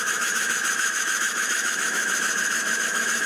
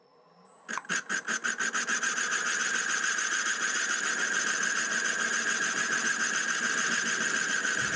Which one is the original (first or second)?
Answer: second